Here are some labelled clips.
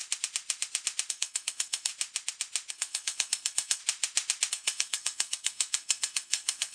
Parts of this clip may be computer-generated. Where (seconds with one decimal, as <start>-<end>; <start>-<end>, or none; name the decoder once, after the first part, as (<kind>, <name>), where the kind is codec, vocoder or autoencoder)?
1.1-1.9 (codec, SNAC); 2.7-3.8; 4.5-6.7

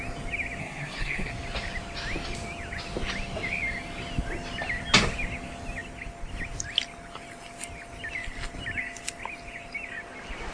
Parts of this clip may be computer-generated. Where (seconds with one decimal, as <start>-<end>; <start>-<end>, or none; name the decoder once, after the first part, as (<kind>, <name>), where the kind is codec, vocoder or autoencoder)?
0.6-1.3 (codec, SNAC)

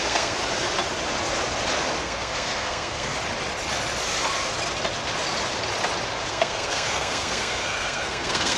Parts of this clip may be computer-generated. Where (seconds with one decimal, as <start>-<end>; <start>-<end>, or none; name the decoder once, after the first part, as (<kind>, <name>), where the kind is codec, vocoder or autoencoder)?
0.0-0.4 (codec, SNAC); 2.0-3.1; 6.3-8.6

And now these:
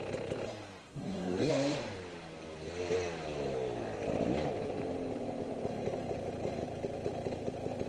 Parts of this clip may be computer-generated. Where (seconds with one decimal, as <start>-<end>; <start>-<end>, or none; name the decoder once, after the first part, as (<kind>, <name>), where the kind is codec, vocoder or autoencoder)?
0.8-1.5 (codec, SNAC)

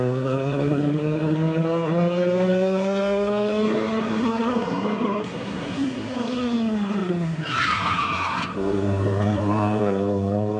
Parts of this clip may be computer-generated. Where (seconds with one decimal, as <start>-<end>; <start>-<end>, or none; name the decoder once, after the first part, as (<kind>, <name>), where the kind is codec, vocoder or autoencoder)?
0.0-10.6 (codec, SNAC)